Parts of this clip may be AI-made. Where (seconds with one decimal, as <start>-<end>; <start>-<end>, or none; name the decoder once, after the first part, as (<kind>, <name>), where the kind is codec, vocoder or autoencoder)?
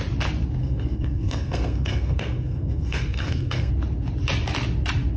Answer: 0.6-3.7 (codec, SNAC)